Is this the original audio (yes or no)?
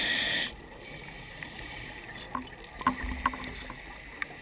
yes